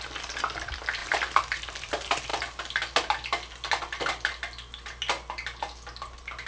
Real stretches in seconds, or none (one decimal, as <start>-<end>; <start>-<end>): 0.0-1.0; 1.9-6.5

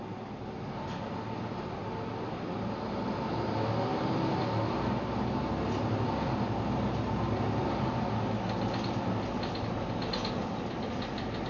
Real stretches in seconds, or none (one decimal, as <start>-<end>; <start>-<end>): 0.0-11.5

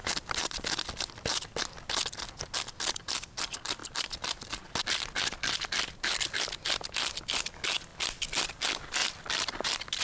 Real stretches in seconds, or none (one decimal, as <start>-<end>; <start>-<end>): 0.0-3.8; 4.6-7.9; 8.6-9.0

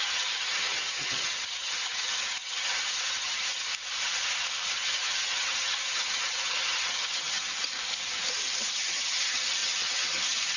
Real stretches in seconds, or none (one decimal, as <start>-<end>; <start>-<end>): 3.7-4.7; 7.5-8.7

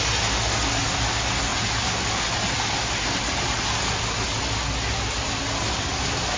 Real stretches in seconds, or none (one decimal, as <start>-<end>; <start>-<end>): 0.0-6.4